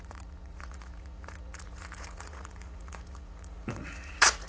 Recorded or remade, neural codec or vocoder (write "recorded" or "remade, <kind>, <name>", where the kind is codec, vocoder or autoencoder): remade, vocoder, Vocos